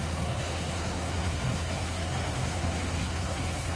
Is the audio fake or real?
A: fake